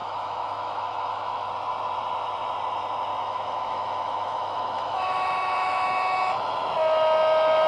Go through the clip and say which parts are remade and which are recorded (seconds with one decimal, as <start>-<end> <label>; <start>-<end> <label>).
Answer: 0.0-1.5 remade; 1.5-3.1 recorded; 3.1-6.7 remade; 6.7-7.7 recorded